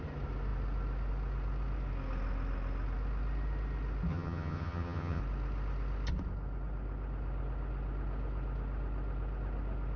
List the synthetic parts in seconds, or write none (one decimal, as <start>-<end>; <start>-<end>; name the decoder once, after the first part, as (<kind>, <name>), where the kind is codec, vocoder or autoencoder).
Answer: 4.1-5.2 (vocoder, HiFi-GAN)